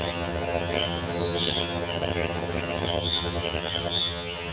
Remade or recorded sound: remade